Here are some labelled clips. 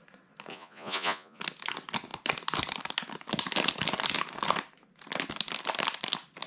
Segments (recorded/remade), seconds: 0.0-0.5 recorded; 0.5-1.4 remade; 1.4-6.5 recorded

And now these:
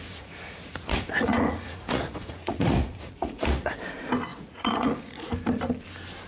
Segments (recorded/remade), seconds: 0.0-3.8 remade; 3.8-4.3 recorded; 4.3-5.3 remade; 5.3-6.3 recorded

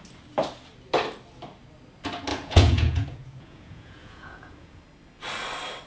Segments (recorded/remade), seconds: 0.0-2.3 recorded; 2.3-4.8 remade; 4.8-5.9 recorded

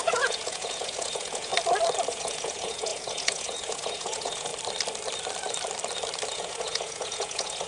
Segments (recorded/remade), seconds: 0.0-1.5 remade; 1.5-2.1 recorded; 2.1-4.5 remade; 4.5-6.3 recorded; 6.3-7.7 remade

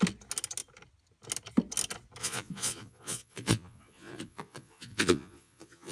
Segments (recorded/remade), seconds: 0.0-2.2 recorded; 2.2-5.9 remade

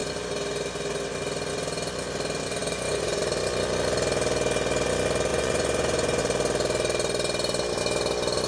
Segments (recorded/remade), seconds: 0.0-2.6 recorded; 2.6-3.2 remade; 3.2-5.3 recorded; 5.3-6.2 remade; 6.2-8.5 recorded

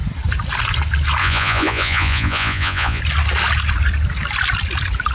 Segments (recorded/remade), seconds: 0.0-1.2 recorded; 1.2-3.0 remade; 3.0-5.1 recorded